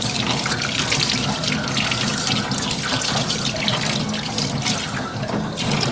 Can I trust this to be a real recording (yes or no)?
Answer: yes